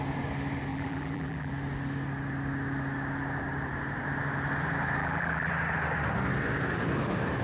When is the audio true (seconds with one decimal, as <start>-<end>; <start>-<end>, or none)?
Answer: 0.0-0.7; 1.5-5.0; 5.5-7.4